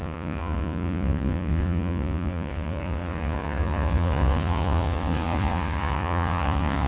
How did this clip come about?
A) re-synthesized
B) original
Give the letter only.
A